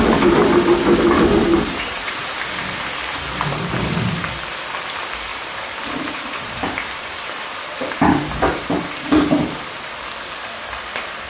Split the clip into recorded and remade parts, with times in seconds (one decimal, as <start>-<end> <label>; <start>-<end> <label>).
0.0-1.5 recorded; 1.5-2.2 remade; 2.2-5.3 recorded; 5.3-10.0 remade; 10.0-11.3 recorded